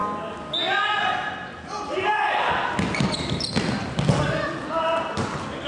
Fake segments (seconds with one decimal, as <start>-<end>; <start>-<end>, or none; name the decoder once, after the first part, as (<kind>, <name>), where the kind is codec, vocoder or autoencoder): none